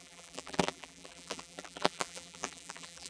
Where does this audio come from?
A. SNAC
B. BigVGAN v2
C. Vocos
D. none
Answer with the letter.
B